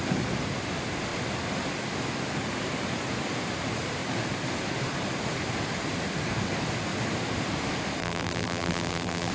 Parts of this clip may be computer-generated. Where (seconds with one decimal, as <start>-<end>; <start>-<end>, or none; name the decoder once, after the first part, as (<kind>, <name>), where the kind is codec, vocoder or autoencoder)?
8.0-9.3 (vocoder, BigVGAN v2)